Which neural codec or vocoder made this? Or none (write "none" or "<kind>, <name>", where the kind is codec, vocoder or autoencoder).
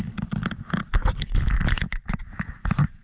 none